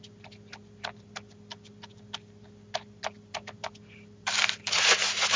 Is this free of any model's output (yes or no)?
yes